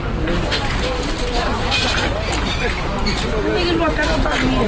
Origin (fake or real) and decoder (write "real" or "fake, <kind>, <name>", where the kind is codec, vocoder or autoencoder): real